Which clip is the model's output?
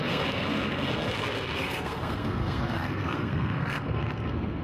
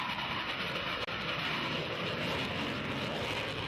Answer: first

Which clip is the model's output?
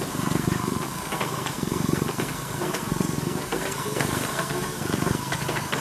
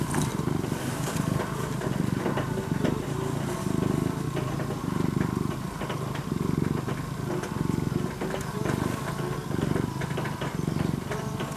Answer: first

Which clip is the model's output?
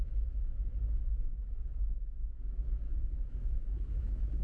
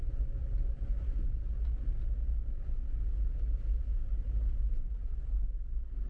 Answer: first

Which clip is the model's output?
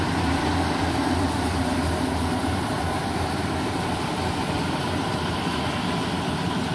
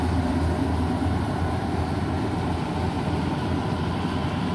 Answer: first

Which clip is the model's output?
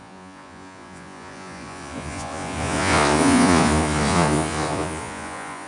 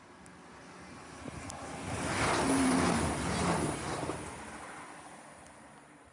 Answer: first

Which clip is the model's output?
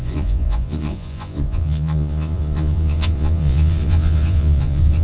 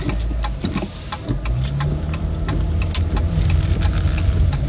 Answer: first